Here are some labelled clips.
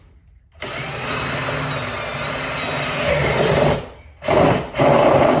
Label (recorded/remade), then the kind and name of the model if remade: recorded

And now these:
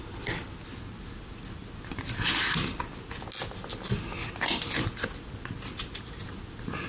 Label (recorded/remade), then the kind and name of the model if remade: recorded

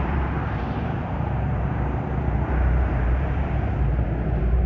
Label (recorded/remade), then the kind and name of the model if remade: remade, vocoder, BigVGAN v2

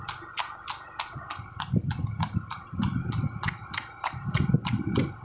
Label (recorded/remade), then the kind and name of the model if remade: recorded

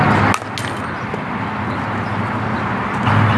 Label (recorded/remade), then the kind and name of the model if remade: recorded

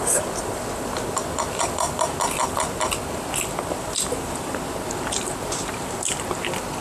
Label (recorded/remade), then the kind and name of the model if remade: recorded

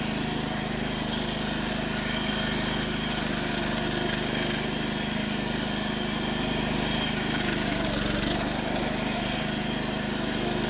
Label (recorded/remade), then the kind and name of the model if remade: recorded